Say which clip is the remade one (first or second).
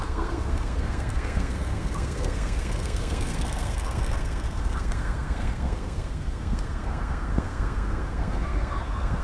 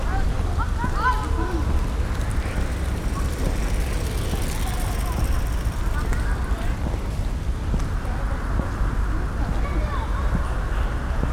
first